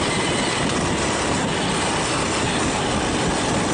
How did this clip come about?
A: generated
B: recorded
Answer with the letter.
B